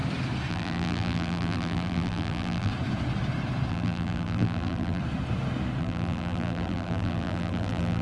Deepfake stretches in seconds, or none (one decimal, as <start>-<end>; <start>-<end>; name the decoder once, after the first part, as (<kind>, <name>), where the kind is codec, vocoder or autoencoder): 0.5-2.7 (vocoder, BigVGAN v2); 3.7-5.0; 5.8-8.0